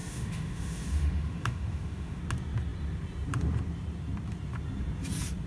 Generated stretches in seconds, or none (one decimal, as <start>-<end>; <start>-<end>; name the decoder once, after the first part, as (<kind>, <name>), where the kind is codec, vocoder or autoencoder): 0.0-2.2 (autoencoder, DAC-VAE)